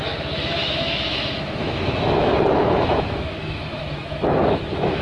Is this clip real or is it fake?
fake